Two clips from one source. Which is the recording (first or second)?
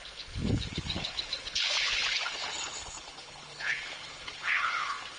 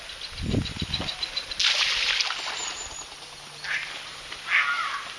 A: second